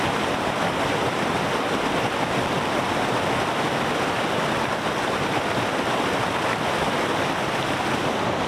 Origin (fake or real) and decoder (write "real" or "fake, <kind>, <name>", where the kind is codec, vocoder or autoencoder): real